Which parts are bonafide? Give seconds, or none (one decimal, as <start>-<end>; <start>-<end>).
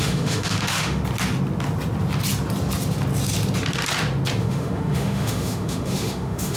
1.0-4.4